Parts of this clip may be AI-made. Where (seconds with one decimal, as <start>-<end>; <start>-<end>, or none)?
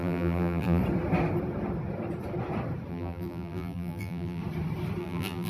0.0-0.8; 2.9-4.4; 5.0-5.5